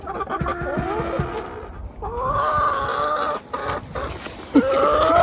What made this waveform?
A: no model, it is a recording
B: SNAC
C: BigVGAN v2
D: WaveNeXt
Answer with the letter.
A